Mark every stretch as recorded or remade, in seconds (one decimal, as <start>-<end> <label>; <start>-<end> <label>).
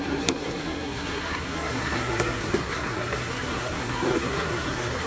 0.0-5.1 remade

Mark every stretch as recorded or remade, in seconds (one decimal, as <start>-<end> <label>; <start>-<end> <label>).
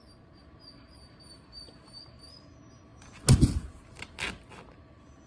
0.0-5.3 recorded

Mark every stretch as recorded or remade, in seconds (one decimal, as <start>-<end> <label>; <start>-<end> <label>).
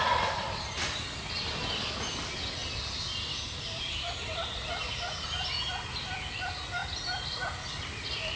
0.0-8.4 recorded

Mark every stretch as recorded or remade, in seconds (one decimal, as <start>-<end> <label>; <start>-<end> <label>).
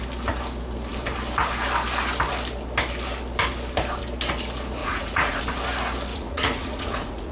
0.0-4.8 recorded; 4.8-5.4 remade; 5.4-6.1 recorded; 6.1-7.3 remade